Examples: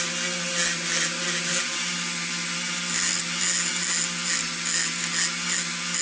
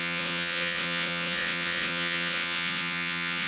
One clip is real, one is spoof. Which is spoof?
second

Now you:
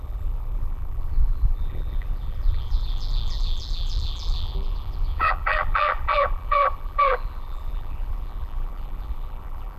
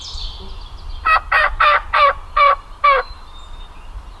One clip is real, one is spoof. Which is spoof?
first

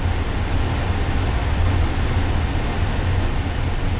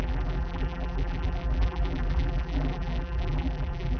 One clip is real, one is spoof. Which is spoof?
second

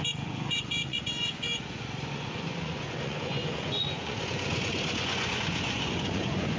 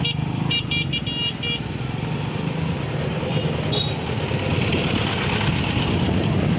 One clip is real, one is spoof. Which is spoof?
first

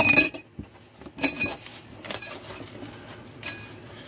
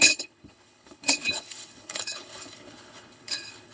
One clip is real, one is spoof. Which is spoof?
second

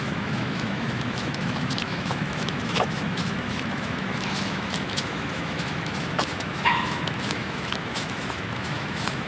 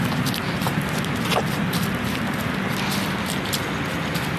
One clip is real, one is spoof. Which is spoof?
first